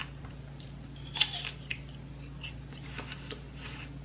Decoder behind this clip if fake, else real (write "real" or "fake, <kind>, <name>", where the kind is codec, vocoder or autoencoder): real